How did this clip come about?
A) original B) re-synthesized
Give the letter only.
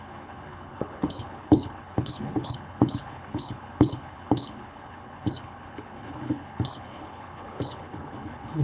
B